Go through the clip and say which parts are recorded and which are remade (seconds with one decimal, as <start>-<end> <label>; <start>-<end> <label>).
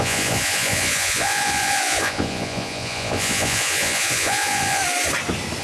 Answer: 0.0-4.8 remade; 4.8-5.6 recorded